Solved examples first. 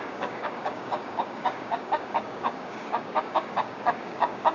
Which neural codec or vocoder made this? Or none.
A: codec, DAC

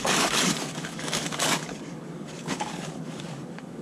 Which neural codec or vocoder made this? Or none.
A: codec, DAC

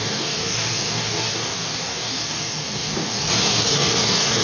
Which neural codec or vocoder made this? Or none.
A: codec, DAC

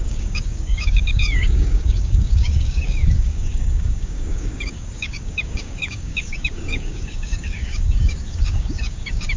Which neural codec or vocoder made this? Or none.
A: codec, DAC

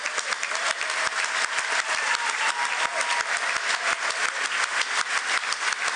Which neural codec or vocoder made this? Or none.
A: none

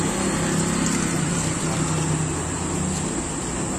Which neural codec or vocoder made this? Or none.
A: none